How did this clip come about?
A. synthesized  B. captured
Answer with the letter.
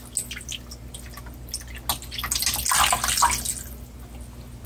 B